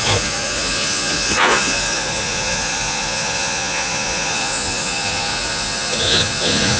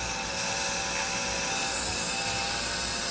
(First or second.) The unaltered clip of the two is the second